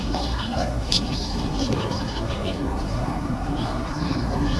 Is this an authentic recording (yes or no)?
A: no